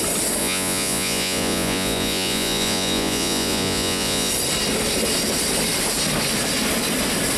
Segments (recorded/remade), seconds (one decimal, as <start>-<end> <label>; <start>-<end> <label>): 0.0-0.4 recorded; 0.4-4.3 remade; 4.3-7.4 recorded